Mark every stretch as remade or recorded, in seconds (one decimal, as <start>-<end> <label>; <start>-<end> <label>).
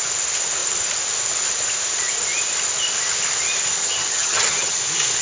0.0-3.8 recorded; 3.8-4.8 remade; 4.8-5.2 recorded